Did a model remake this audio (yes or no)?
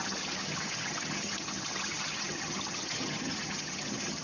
yes